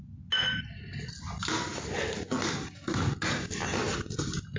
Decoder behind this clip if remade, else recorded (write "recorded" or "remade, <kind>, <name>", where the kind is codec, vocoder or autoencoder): recorded